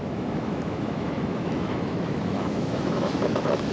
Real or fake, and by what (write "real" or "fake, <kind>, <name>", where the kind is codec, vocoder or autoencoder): fake, autoencoder, DAC-VAE